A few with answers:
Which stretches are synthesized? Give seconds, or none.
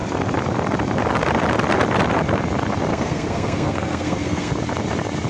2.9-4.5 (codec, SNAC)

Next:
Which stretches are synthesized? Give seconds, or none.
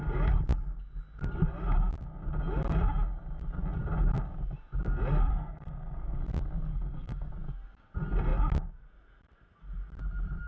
5.3-6.2 (codec, SNAC); 6.7-7.3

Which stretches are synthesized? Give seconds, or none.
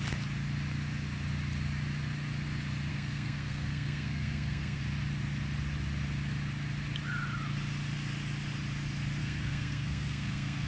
2.9-4.8 (codec, SNAC); 9.2-10.7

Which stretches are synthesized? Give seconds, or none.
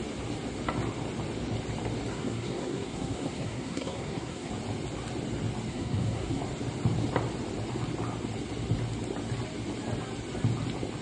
2.1-4.5 (codec, SNAC); 5.7-6.4